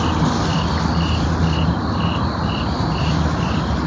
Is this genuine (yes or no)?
yes